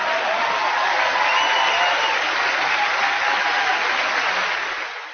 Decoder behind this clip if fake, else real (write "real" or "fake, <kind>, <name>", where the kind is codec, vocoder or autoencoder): real